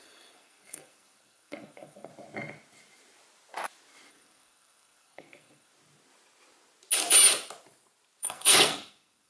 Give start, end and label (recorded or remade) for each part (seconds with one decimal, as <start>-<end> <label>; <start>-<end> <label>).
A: 0.0-2.1 remade; 2.1-4.1 recorded; 4.1-5.7 remade; 5.7-8.2 recorded; 8.2-9.3 remade